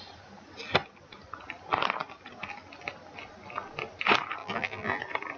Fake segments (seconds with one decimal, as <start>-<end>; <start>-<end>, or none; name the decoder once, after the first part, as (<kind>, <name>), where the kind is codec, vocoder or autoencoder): 4.4-5.0 (vocoder, BigVGAN v2)